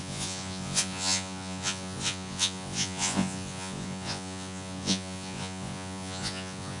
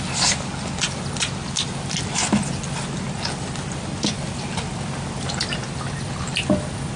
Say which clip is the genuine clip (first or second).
second